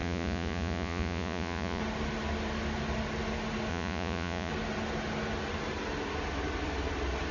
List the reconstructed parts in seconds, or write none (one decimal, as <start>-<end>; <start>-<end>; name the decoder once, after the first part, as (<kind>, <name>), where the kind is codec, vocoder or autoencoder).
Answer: 0.0-1.8 (vocoder, Vocos); 3.7-4.5